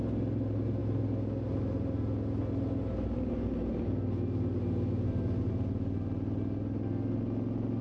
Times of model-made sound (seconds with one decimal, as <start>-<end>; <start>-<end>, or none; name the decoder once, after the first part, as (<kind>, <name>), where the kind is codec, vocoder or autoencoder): none